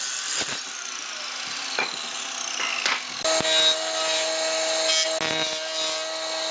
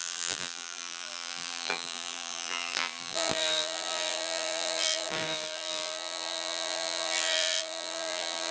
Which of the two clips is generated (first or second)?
second